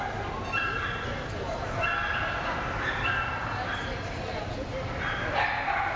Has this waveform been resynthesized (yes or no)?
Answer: no